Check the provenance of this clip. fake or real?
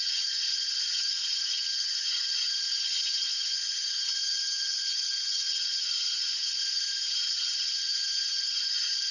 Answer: fake